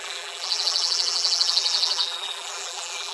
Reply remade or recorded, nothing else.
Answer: remade